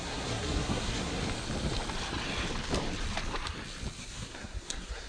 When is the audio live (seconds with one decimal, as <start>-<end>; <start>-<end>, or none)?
1.2-4.0